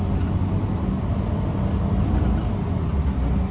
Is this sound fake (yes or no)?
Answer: no